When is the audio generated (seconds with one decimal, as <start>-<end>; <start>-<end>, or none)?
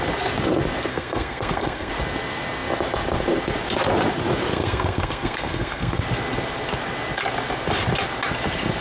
0.9-1.9; 4.5-6.0